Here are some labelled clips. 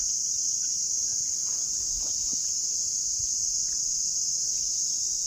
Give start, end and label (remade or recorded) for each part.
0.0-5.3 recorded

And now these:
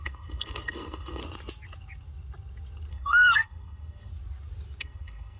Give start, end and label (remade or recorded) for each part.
0.0-1.2 remade; 1.2-2.9 recorded; 2.9-4.1 remade; 4.1-4.8 recorded; 4.8-5.4 remade

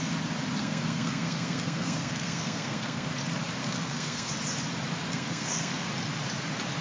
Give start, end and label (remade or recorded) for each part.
0.0-0.6 recorded; 0.6-3.1 remade; 3.1-3.6 recorded; 3.6-4.3 remade; 4.3-5.1 recorded; 5.1-5.9 remade; 5.9-6.8 recorded

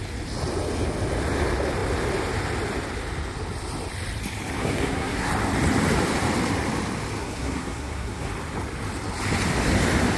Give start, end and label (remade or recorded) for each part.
0.0-4.6 recorded; 4.6-5.3 remade; 5.3-7.2 recorded; 7.2-8.3 remade; 8.3-10.2 recorded

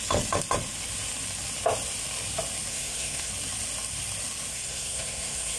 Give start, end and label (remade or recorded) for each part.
0.0-2.7 recorded; 2.7-3.3 remade; 3.3-4.5 recorded; 4.5-5.6 remade

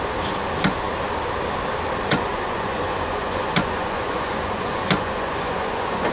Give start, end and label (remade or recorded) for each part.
0.0-2.1 recorded; 2.1-6.1 remade

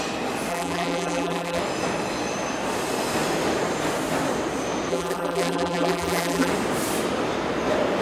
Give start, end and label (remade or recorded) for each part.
0.0-0.5 recorded; 0.5-1.6 remade; 1.6-4.9 recorded; 4.9-6.5 remade; 6.5-8.0 recorded

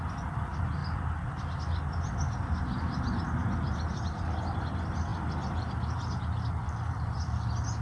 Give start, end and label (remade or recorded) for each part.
0.0-7.8 recorded